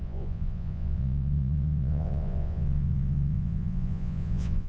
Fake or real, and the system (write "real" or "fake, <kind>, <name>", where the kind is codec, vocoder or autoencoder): fake, vocoder, Vocos